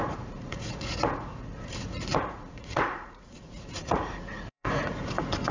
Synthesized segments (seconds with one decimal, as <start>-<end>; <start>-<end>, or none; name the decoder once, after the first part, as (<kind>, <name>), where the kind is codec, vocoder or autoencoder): 0.0-5.5 (vocoder, Vocos)